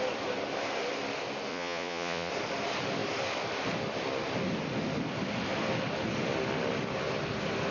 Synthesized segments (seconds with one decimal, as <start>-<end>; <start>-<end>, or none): 1.5-2.3